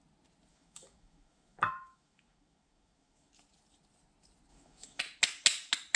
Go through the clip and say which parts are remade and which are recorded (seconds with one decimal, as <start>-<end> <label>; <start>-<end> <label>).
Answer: 0.0-0.5 recorded; 0.5-3.3 remade; 3.3-4.5 recorded; 4.5-5.0 remade; 5.0-6.0 recorded